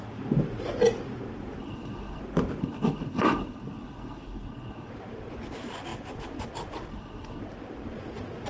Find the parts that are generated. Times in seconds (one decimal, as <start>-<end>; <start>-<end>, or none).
1.6-2.2; 2.6-4.9; 6.9-7.4